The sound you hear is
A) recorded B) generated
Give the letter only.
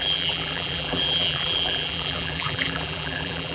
B